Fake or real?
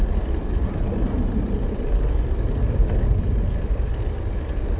real